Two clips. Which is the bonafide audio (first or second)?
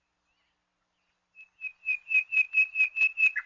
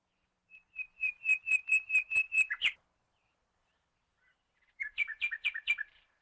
first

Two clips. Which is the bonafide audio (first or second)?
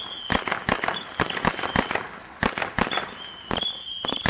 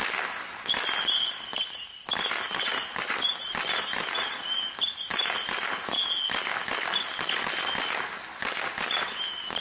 second